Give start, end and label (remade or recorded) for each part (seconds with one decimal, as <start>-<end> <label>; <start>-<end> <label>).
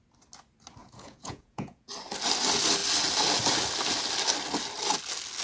0.0-0.8 recorded; 0.8-1.9 remade; 1.9-5.4 recorded